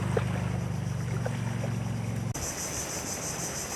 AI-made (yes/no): no